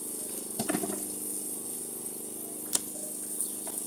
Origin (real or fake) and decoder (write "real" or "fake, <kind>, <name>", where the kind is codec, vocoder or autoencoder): real